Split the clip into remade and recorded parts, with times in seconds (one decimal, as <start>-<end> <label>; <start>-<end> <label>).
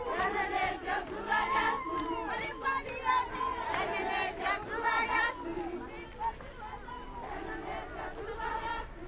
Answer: 0.0-9.1 recorded